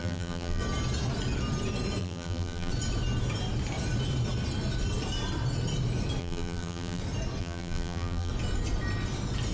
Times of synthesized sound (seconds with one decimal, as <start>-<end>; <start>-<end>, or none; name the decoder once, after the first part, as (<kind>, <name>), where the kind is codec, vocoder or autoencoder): 0.0-0.6 (vocoder, BigVGAN v2); 2.0-2.7; 6.2-7.0; 7.4-8.3